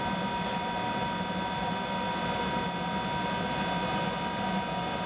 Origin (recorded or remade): recorded